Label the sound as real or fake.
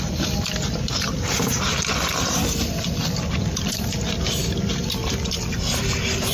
real